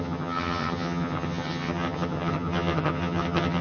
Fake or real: fake